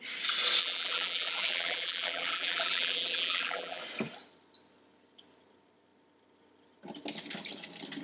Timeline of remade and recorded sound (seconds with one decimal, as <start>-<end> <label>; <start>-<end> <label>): 0.0-0.6 recorded; 0.6-3.8 remade; 3.8-8.0 recorded